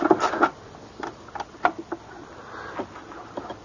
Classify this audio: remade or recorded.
recorded